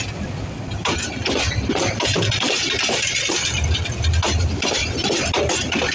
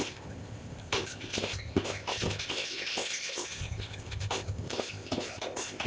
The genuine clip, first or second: first